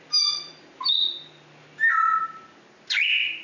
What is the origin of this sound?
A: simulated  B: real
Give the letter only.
B